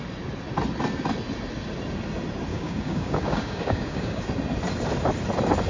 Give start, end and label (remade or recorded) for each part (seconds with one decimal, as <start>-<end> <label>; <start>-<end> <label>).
0.0-2.5 recorded; 2.5-4.2 remade; 4.2-5.7 recorded